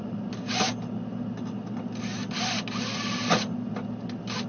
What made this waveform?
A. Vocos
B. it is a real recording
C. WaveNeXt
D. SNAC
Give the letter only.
B